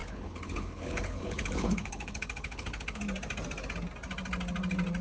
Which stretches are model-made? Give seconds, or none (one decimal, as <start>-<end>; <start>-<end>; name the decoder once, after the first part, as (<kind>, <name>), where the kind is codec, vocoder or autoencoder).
0.0-3.0 (codec, HILCodec)